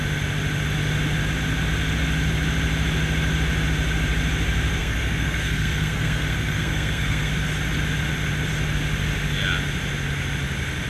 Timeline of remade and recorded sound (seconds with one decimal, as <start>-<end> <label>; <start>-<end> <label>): 0.0-4.8 recorded; 4.8-7.3 remade; 7.3-10.9 recorded